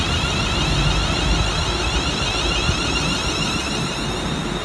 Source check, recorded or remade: recorded